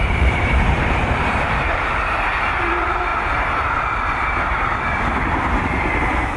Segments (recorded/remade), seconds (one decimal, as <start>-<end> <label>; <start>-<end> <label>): 0.0-3.1 remade; 3.1-6.0 recorded; 6.0-6.4 remade